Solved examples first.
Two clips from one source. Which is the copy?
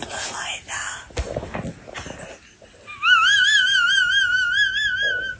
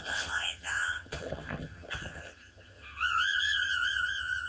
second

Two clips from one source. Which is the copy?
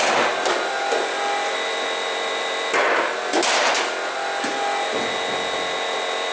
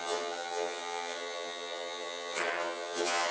second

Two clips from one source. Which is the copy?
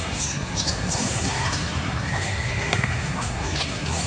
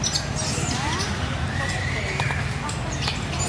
first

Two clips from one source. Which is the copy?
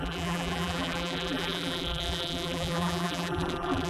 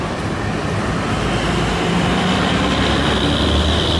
first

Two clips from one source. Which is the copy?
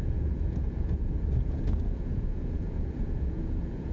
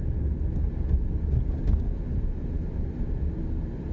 first